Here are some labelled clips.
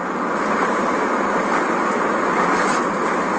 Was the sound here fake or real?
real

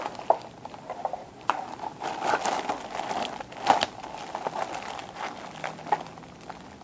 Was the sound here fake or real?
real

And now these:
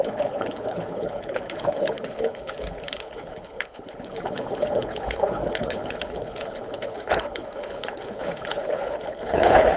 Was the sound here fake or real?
fake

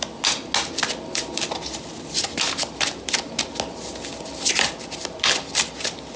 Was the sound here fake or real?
real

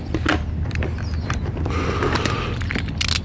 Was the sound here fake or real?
real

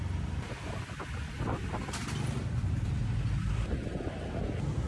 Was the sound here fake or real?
real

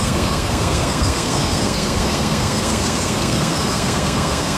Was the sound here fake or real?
fake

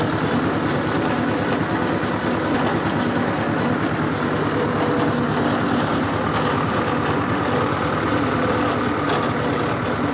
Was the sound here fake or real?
real